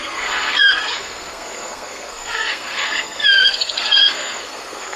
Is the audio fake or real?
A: fake